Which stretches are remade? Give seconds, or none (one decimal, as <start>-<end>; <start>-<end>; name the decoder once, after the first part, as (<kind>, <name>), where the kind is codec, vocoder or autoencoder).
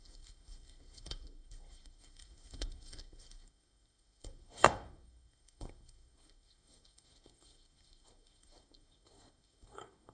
0.0-10.1 (codec, SNAC)